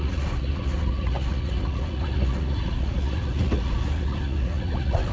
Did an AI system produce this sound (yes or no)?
yes